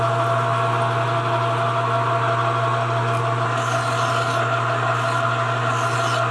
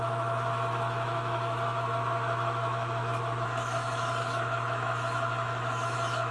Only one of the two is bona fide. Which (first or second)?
first